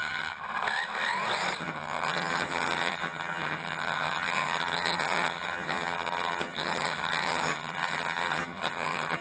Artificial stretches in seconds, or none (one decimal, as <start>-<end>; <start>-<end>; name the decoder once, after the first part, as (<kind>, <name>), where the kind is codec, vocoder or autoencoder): 0.0-0.4 (vocoder, HiFi-GAN); 1.6-9.2

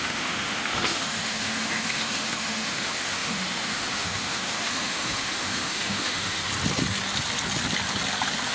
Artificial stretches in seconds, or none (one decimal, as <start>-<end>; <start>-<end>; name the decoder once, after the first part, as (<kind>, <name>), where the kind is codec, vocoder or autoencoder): 0.0-6.5 (autoencoder, DAC-VAE)